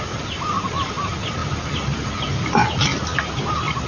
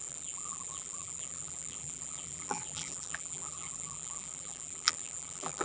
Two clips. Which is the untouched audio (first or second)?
first